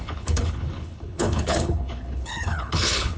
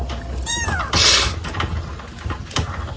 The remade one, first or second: first